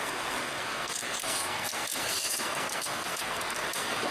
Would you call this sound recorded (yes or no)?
no